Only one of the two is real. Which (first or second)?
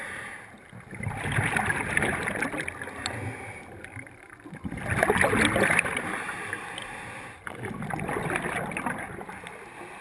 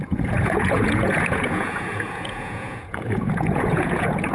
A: first